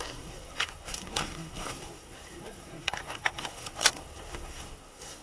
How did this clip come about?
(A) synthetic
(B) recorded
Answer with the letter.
A